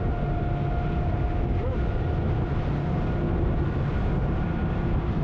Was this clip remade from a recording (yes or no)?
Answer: no